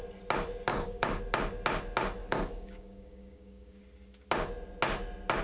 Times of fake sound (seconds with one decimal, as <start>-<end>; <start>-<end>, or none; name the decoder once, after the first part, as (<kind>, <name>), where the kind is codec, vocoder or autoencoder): 0.7-1.2 (codec, DAC); 2.2-3.8